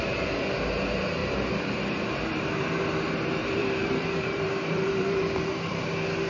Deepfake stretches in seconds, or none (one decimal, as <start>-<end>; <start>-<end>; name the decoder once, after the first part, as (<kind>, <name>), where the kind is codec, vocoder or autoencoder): 1.2-2.5 (vocoder, BigVGAN v2); 3.4-5.5